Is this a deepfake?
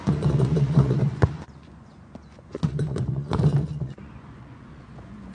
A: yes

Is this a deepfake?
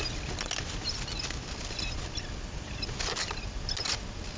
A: no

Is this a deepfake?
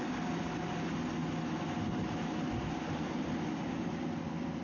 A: no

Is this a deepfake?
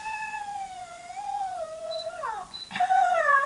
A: yes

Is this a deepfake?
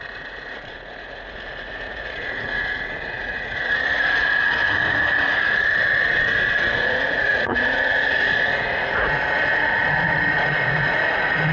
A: yes